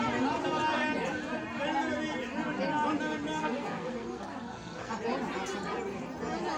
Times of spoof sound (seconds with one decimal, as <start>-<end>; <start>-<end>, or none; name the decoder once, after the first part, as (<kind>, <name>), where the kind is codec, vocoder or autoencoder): 3.4-4.9 (codec, SNAC)